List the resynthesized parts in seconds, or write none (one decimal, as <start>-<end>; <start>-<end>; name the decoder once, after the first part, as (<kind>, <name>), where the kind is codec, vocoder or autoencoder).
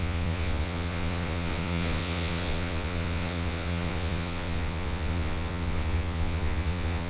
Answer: 0.0-7.1 (vocoder, Vocos)